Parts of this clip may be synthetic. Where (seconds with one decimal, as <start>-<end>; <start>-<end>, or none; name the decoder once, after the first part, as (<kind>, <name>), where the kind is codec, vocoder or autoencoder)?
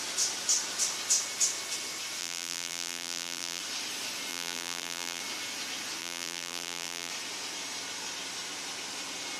2.2-3.6 (vocoder, BigVGAN v2); 4.3-5.2; 6.0-7.1